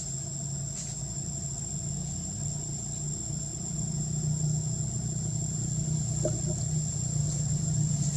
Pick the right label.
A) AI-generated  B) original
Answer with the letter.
B